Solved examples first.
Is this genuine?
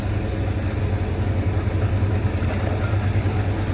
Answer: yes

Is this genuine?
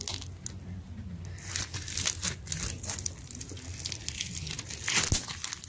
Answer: yes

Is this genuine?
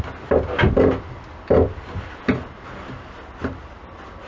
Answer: yes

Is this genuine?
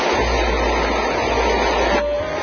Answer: yes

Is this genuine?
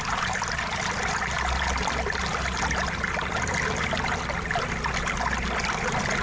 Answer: yes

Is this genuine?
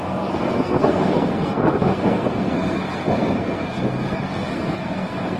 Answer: no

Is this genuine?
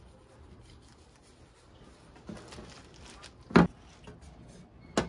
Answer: yes